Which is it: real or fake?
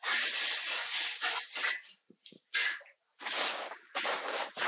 fake